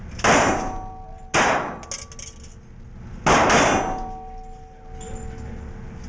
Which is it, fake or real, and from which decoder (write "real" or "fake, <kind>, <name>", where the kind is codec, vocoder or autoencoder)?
real